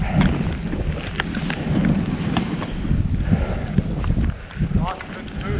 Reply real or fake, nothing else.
real